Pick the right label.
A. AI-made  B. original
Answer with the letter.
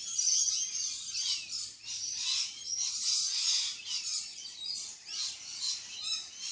B